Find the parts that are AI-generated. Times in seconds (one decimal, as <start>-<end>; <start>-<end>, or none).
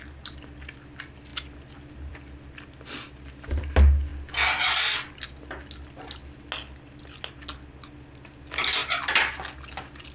none